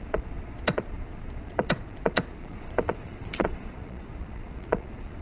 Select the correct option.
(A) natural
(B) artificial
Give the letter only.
B